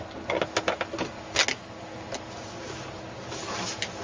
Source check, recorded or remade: recorded